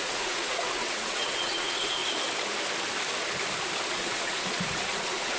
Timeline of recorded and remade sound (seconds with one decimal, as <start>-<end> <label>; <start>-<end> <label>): 0.0-2.0 remade; 2.0-3.9 recorded; 3.9-5.4 remade